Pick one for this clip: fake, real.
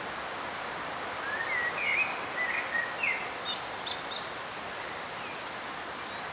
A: real